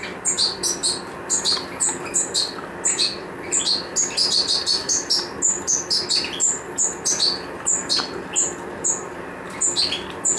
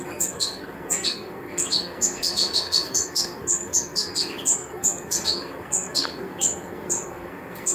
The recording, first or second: first